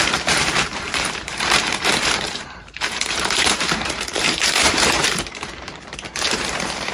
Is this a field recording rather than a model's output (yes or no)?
no